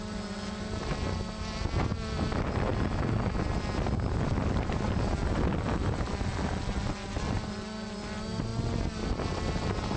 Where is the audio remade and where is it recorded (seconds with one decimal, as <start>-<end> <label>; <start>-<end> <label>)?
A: 0.0-10.0 recorded